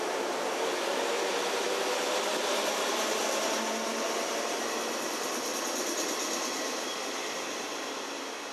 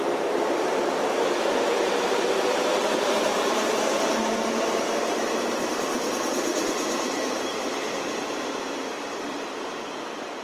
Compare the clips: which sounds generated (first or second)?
second